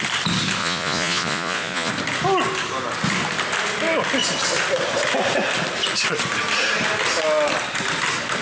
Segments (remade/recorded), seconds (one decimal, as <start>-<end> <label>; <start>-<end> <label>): 0.0-0.6 recorded; 0.6-1.9 remade; 1.9-8.4 recorded